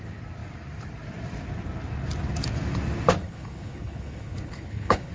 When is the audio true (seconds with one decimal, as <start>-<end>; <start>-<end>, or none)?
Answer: 0.0-3.2